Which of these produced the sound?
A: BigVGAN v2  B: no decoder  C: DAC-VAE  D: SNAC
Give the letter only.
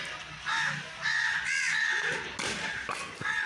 B